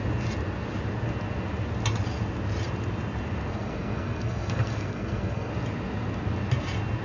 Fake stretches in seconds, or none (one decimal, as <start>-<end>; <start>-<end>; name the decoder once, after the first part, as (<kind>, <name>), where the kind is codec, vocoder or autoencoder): 3.5-5.5 (codec, SNAC)